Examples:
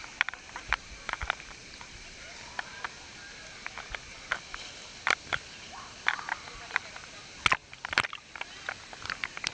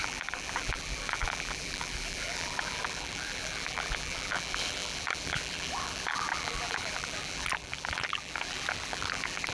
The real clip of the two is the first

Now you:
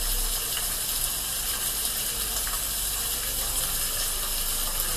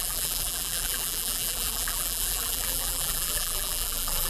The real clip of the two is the first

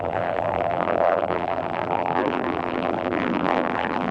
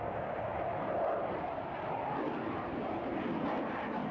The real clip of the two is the second